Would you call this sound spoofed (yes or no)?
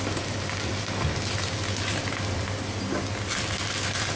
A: no